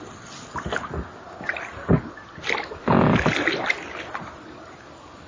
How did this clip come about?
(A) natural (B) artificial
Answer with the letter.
A